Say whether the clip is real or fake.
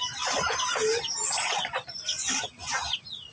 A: real